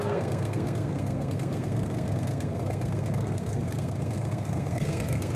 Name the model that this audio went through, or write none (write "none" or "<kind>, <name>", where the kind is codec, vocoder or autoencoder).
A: codec, SNAC